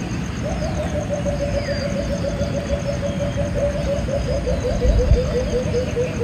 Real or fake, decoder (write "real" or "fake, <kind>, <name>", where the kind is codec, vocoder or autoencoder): real